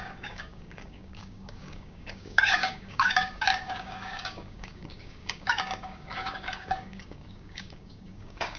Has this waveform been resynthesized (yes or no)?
yes